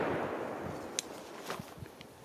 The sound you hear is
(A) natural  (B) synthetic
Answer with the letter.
A